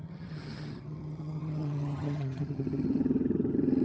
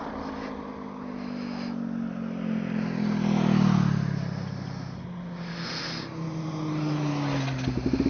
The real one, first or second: second